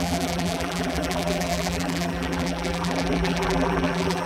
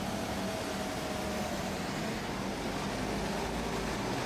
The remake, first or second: first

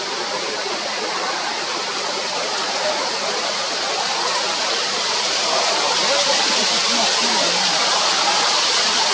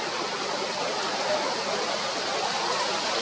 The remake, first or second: first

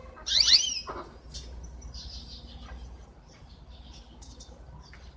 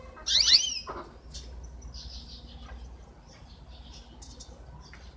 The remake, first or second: first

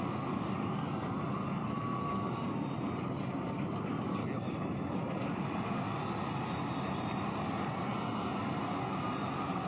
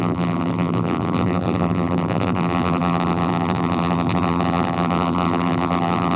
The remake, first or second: second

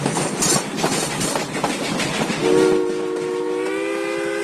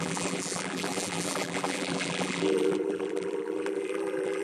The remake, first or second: second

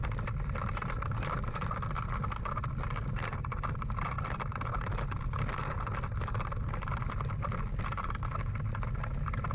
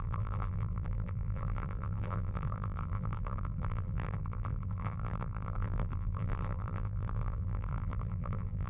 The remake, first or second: second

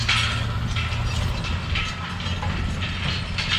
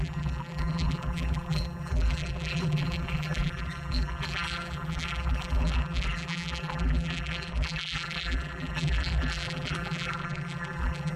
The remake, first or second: second